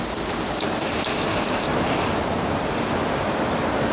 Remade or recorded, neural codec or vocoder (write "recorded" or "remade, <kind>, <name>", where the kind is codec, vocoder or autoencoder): recorded